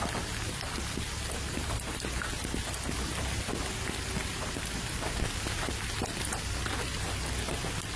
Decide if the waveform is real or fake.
real